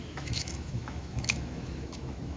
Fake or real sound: fake